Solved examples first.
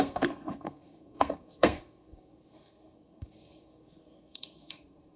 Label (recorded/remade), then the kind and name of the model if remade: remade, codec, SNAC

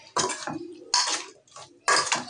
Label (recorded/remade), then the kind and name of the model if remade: recorded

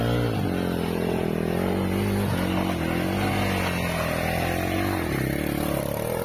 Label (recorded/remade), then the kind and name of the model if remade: recorded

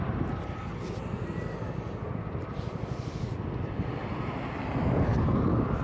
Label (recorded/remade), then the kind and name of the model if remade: recorded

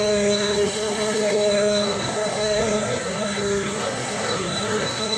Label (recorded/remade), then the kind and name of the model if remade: remade, codec, SNAC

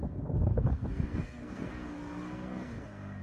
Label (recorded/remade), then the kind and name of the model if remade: remade, codec, SNAC